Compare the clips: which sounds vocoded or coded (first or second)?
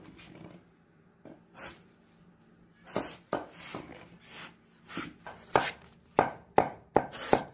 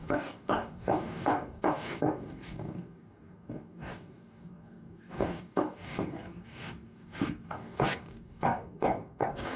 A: second